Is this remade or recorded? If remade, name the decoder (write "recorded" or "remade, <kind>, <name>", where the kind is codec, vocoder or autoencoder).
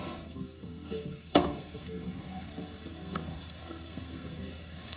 remade, codec, SNAC